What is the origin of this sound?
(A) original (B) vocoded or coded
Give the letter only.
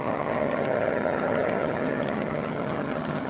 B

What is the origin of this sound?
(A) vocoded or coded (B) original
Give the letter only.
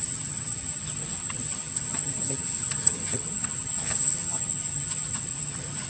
A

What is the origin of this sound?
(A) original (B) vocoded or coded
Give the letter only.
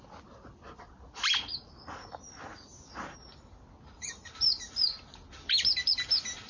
A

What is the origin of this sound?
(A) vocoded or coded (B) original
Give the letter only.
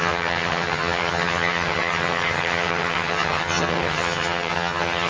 A